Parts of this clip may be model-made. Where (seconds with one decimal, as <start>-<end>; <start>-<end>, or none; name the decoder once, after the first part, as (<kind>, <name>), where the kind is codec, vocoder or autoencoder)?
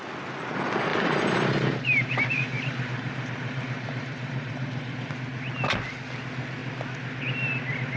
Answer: 0.9-5.1 (vocoder, BigVGAN v2)